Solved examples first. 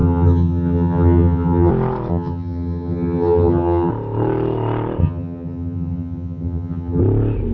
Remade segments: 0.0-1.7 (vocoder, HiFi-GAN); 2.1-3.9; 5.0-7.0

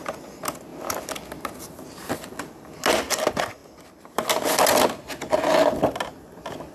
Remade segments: none